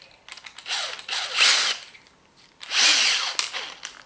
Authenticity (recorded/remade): recorded